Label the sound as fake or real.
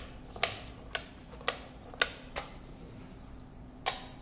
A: real